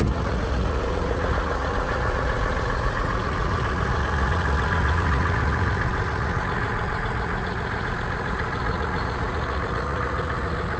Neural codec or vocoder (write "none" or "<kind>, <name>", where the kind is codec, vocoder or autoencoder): vocoder, Vocos